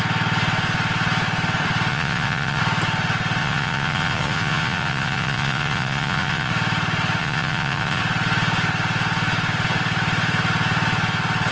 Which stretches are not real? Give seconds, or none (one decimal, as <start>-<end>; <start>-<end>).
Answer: 1.9-2.6; 3.4-6.5; 7.2-8.0